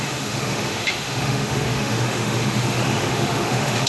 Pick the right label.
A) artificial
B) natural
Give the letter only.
A